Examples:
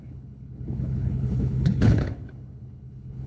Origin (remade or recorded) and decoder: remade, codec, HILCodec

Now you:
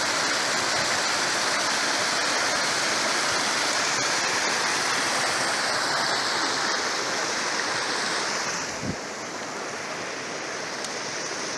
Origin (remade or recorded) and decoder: recorded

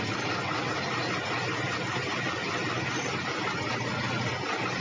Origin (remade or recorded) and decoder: recorded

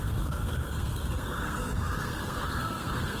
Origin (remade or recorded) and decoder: remade, codec, SNAC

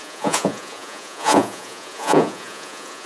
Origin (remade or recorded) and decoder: remade, vocoder, Vocos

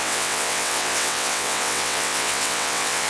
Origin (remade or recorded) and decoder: remade, vocoder, WaveNeXt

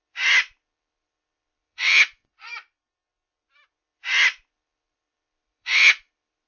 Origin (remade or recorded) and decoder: remade, vocoder, BigVGAN v2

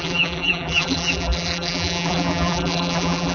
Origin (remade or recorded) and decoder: remade, vocoder, BigVGAN v2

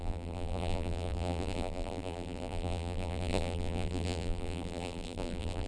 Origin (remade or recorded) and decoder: remade, vocoder, BigVGAN v2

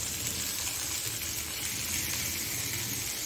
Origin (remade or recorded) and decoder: recorded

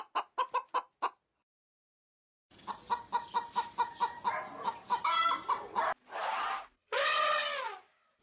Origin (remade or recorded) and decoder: recorded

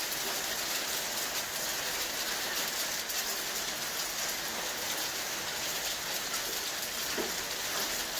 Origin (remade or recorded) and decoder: recorded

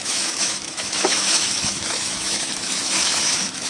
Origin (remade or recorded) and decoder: remade, autoencoder, DAC-VAE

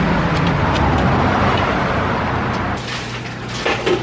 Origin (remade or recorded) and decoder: recorded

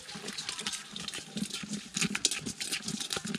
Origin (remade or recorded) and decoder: recorded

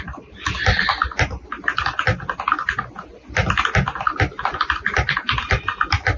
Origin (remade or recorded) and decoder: recorded